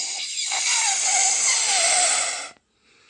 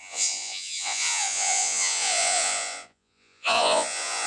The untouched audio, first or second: first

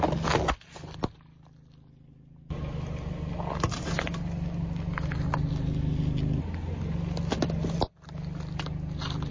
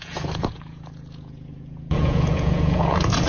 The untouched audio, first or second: first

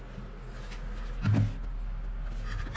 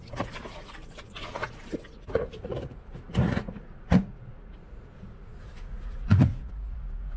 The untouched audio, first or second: first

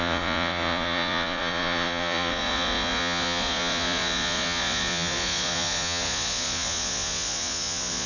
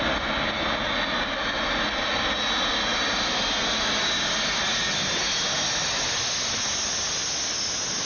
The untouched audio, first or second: second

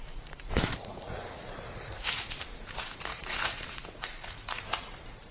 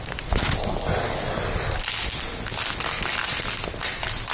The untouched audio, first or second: second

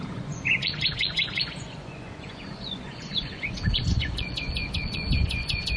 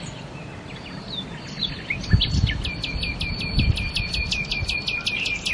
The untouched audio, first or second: second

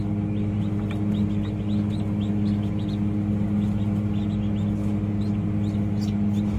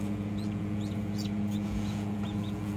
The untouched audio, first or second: first